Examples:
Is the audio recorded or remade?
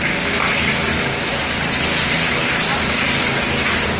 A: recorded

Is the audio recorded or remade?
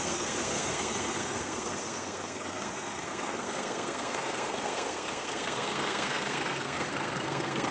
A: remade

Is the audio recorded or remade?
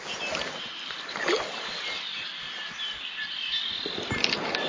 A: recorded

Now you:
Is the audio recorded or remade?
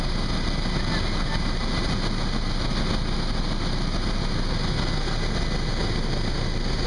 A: recorded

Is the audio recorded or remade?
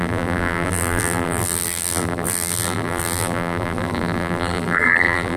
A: remade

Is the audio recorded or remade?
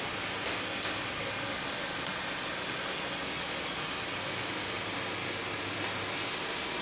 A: recorded